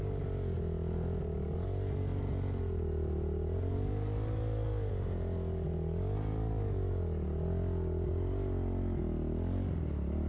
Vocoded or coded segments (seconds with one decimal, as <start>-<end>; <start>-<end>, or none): none